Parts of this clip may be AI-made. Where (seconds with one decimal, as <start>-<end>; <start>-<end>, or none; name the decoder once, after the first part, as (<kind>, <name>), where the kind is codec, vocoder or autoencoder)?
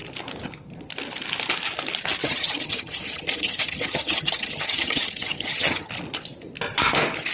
2.2-5.9 (vocoder, HiFi-GAN)